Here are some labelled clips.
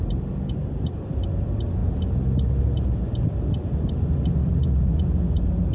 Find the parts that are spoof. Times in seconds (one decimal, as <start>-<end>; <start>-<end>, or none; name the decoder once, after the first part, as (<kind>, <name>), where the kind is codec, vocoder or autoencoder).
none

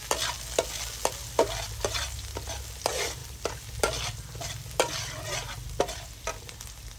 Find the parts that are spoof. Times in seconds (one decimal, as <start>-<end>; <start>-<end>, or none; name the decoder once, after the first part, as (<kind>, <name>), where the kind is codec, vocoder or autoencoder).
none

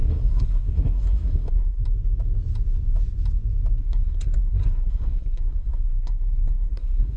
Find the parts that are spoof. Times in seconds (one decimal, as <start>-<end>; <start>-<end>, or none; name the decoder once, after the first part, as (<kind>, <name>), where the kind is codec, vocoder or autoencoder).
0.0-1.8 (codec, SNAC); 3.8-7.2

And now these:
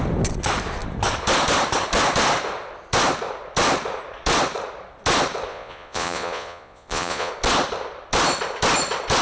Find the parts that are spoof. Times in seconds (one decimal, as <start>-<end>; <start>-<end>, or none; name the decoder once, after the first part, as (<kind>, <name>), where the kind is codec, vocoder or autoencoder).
5.5-7.3 (vocoder, Vocos)